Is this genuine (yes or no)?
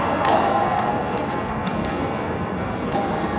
no